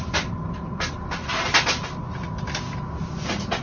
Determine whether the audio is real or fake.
real